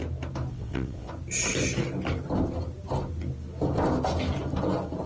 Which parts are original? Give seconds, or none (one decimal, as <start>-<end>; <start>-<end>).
0.0-0.5; 1.1-5.1